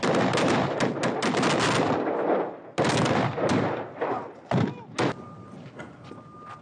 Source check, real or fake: real